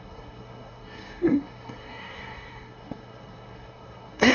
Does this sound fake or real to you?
fake